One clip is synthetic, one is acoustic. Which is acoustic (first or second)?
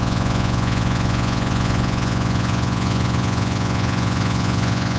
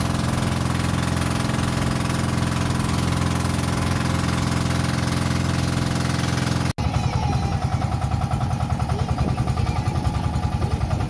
second